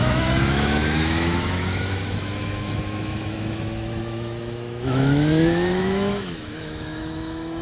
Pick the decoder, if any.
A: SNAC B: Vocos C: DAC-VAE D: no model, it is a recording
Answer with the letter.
C